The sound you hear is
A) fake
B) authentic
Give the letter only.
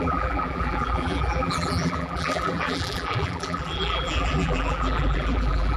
A